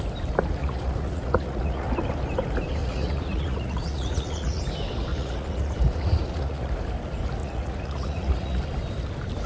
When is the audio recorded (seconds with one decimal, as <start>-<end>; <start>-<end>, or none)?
0.0-0.6; 1.9-2.8; 4.6-5.1; 6.7-7.4; 8.6-9.5